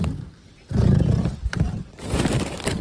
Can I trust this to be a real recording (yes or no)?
no